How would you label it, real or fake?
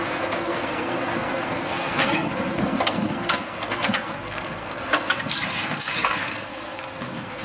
fake